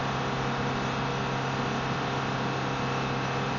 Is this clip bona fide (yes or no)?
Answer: yes